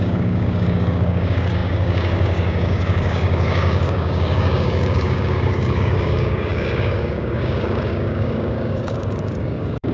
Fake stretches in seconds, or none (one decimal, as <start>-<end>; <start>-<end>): 0.0-9.9